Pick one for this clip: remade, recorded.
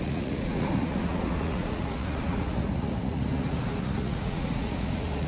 remade